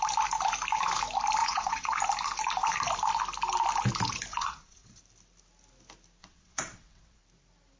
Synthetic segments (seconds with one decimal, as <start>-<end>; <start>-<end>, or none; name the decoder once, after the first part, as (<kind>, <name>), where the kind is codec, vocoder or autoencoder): 1.4-2.0 (vocoder, WaveNeXt); 4.3-5.0; 6.2-7.2